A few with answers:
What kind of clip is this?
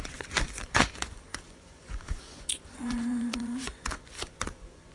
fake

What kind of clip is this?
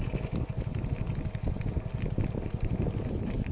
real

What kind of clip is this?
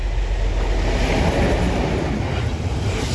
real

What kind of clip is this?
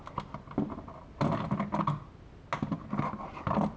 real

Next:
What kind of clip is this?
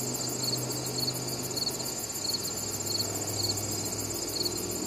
real